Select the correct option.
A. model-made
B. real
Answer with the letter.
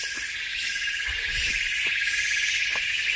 B